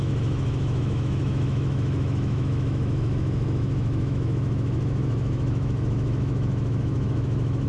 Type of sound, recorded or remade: remade